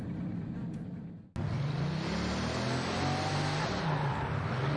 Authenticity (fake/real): real